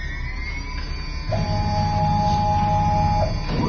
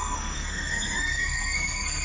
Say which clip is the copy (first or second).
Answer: second